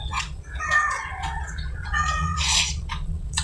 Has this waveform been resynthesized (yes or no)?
yes